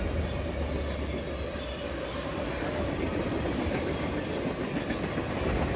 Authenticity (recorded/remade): recorded